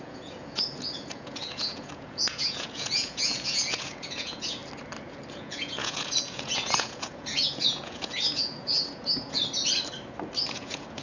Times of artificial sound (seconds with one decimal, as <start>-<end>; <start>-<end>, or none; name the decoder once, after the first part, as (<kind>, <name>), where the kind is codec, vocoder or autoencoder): 0.0-4.6 (vocoder, Vocos); 5.3-9.4; 10.4-11.0